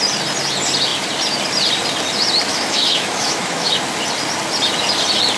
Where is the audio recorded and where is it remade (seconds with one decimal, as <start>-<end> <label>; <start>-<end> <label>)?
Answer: 0.0-2.5 recorded; 2.5-3.7 remade; 3.7-5.4 recorded